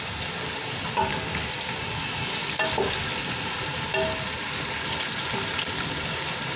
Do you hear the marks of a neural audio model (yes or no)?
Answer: no